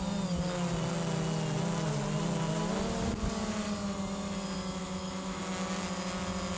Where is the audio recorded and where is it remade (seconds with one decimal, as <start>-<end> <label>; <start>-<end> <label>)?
0.0-4.8 recorded; 4.8-5.4 remade; 5.4-6.6 recorded